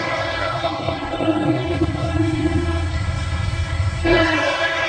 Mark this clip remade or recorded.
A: remade